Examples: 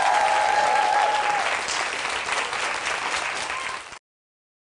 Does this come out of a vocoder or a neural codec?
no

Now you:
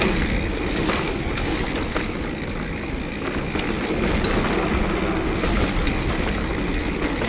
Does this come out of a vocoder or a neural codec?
no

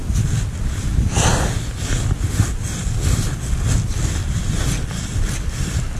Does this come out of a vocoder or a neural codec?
no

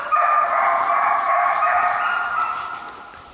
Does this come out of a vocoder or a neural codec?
no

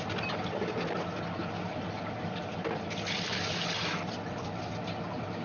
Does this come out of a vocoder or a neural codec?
no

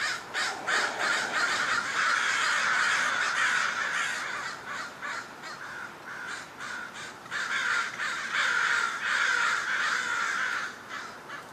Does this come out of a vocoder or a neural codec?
no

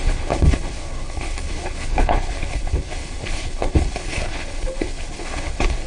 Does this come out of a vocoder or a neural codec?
yes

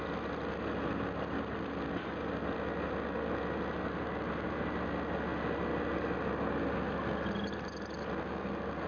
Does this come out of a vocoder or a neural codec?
no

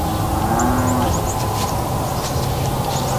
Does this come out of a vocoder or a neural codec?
no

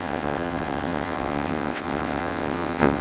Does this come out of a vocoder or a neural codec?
yes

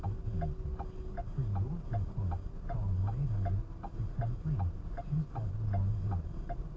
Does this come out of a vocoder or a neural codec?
no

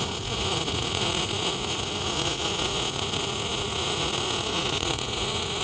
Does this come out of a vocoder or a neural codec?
yes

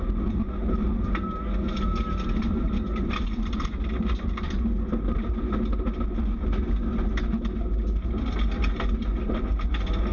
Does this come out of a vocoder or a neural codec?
no